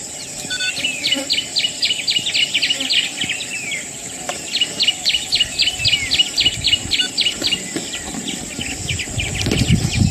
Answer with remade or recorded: recorded